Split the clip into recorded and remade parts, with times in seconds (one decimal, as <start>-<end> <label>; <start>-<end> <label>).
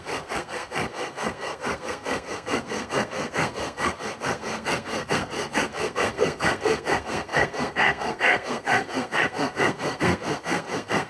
0.0-11.1 remade